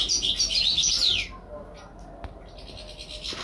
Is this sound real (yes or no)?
yes